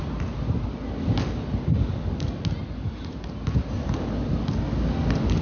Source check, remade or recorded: recorded